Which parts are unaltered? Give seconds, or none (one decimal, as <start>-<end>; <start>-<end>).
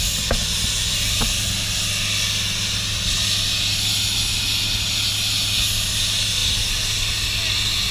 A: 0.0-7.9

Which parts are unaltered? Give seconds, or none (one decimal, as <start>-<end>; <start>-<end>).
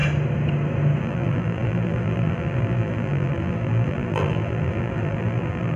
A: 0.0-1.0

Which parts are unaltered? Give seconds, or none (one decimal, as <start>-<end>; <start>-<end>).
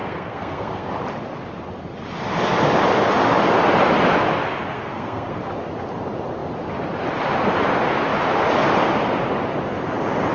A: 0.9-4.7; 5.4-10.3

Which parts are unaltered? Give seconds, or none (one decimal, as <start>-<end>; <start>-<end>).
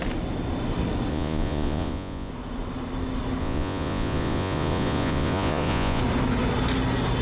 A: 0.0-1.1; 2.3-3.4; 6.0-7.2